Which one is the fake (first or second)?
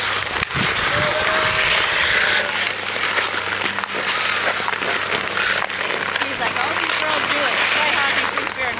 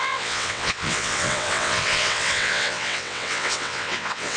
second